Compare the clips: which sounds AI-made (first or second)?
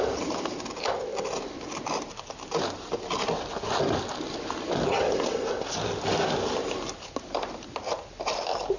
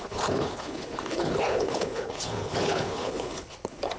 second